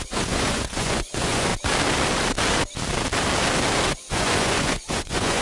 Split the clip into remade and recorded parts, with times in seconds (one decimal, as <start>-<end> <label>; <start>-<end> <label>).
0.0-1.5 remade; 1.5-3.9 recorded; 3.9-5.4 remade

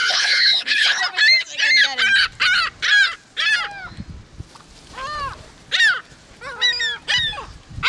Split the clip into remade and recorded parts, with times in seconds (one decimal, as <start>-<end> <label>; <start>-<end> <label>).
0.0-1.0 remade; 1.0-7.9 recorded

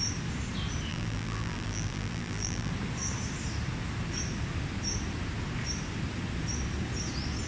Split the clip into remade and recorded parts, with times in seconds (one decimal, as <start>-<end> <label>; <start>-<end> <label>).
0.0-0.9 recorded; 0.9-2.7 remade; 2.7-7.5 recorded

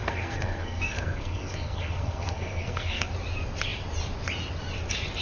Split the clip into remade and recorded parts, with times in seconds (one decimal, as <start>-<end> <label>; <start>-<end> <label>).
0.0-3.1 remade; 3.1-5.2 recorded